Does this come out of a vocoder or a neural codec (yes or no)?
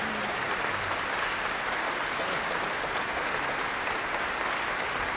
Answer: yes